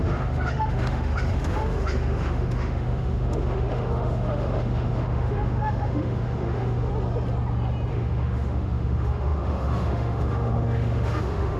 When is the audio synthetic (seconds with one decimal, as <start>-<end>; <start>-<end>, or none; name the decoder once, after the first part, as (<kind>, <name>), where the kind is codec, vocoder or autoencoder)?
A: 0.0-6.9 (autoencoder, DAC-VAE); 7.9-11.6